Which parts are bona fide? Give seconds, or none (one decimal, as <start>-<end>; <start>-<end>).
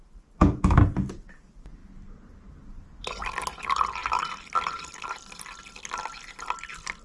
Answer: 0.0-7.0